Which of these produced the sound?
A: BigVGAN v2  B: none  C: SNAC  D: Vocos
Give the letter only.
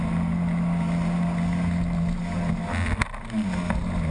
B